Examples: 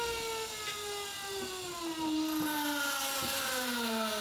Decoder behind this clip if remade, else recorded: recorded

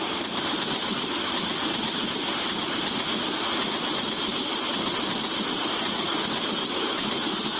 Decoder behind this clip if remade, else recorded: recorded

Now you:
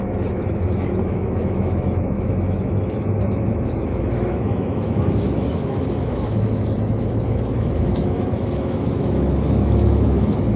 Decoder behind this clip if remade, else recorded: remade, autoencoder, DAC-VAE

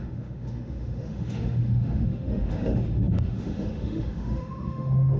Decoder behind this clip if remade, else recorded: remade, autoencoder, DAC-VAE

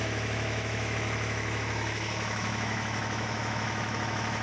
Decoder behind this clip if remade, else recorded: remade, autoencoder, DAC-VAE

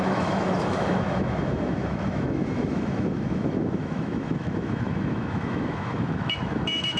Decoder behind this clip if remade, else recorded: remade, autoencoder, DAC-VAE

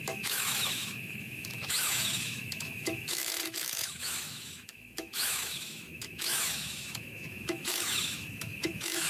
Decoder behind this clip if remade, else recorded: remade, autoencoder, DAC-VAE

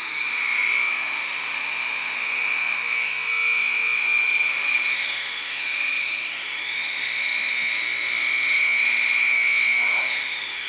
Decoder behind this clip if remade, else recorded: remade, autoencoder, DAC-VAE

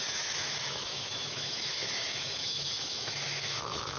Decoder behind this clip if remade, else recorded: remade, autoencoder, DAC-VAE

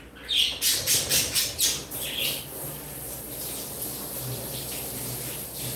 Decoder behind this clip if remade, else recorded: recorded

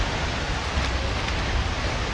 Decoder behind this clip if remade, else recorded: recorded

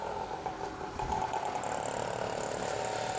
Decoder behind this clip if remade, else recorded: recorded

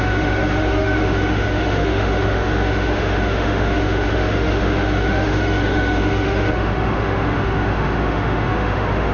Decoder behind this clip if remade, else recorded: remade, autoencoder, DAC-VAE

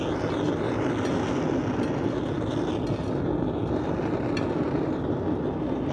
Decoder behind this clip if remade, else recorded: recorded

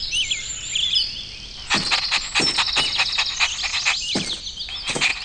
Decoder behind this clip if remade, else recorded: recorded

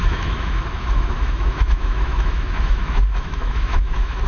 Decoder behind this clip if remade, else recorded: remade, autoencoder, DAC-VAE